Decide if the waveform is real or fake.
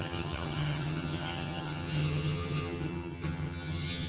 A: fake